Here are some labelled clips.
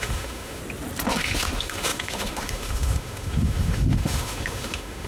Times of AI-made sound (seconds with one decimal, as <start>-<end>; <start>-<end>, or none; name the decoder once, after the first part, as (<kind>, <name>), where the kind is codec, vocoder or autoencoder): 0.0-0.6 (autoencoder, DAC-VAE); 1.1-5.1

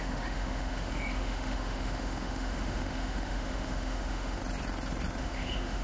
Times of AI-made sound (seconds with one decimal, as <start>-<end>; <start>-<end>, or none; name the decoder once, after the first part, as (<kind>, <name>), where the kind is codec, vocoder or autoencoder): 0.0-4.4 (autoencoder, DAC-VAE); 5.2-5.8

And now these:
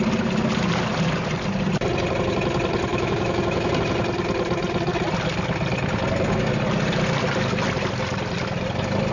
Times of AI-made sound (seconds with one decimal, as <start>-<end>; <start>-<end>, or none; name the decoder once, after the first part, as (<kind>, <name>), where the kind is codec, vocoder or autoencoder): 2.9-3.7 (autoencoder, DAC-VAE)

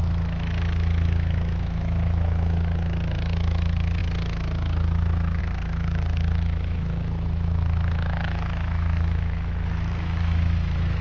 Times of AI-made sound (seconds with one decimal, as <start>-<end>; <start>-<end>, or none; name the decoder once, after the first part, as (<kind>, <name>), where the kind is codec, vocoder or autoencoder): 0.0-11.0 (autoencoder, DAC-VAE)

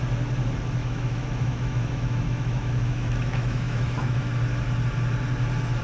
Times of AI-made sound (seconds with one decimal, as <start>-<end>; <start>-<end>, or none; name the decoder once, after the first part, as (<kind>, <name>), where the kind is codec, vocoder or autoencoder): 0.8-4.3 (autoencoder, DAC-VAE)

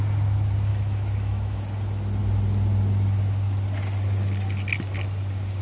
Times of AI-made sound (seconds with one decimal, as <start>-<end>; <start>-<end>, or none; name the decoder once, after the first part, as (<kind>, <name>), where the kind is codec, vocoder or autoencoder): 0.7-1.6 (autoencoder, DAC-VAE)

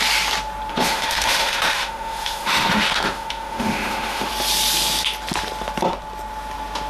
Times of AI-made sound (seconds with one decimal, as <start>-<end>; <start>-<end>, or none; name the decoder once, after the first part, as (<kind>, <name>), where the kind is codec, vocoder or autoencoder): 0.7-4.3 (autoencoder, DAC-VAE)